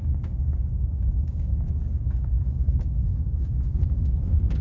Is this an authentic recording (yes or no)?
no